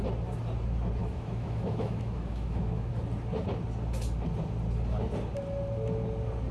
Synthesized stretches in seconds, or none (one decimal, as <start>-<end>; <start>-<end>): 1.0-2.9